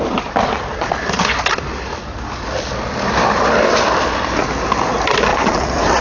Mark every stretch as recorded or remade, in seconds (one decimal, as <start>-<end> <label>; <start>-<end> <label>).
0.0-5.3 recorded; 5.3-6.0 remade